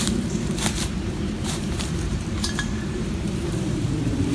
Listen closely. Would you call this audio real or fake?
fake